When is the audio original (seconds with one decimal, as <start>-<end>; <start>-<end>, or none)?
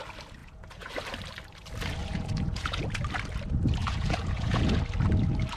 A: 0.0-0.4; 0.9-2.0; 2.8-3.8; 4.8-5.6